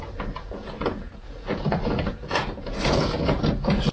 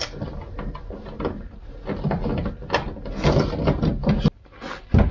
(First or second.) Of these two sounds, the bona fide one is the second